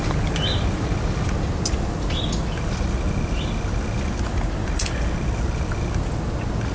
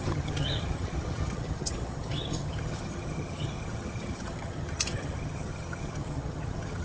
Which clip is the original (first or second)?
first